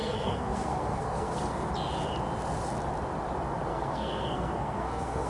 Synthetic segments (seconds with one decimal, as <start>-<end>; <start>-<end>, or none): 0.0-1.7; 3.7-5.3